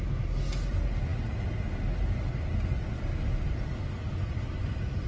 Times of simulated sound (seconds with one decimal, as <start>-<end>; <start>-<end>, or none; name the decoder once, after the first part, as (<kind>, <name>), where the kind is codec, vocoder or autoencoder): none